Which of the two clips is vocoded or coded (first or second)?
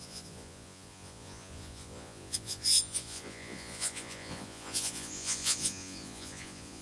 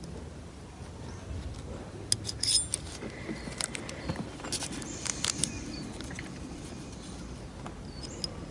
first